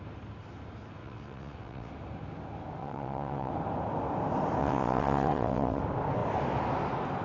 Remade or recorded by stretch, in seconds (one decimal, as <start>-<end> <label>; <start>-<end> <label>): 0.0-1.0 recorded; 1.0-1.9 remade; 1.9-2.8 recorded; 2.8-3.5 remade; 3.5-4.6 recorded; 4.6-5.8 remade; 5.8-7.2 recorded